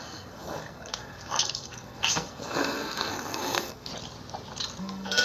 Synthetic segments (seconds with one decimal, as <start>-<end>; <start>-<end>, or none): 0.0-3.9; 4.8-5.2